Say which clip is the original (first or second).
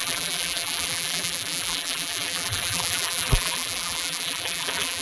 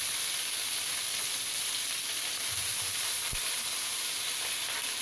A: second